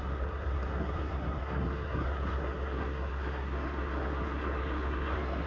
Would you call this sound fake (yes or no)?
yes